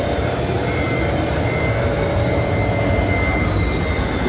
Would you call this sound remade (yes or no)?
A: no